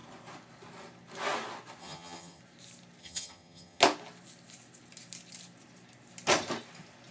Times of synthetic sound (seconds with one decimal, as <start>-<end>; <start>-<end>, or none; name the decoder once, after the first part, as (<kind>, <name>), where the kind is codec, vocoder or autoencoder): 1.8-2.4 (vocoder, HiFi-GAN); 3.0-3.8